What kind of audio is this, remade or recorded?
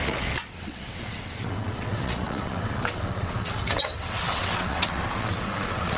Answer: remade